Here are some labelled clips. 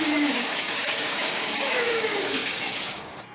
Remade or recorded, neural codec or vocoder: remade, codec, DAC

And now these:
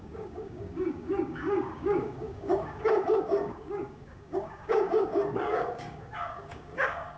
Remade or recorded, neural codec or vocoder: remade, codec, DAC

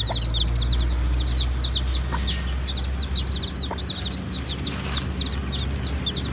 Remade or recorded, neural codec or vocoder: recorded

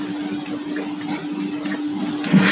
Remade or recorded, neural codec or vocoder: recorded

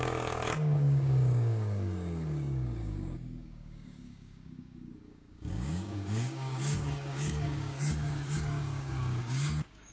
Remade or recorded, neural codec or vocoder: remade, codec, DAC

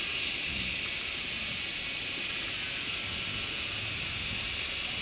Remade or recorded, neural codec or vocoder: recorded